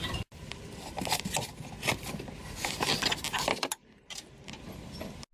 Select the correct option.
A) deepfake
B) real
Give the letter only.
B